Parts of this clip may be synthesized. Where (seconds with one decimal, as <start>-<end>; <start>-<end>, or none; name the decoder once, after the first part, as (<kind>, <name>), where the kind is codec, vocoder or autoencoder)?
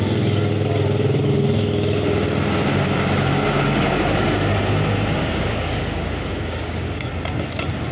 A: 5.2-7.1 (codec, DAC)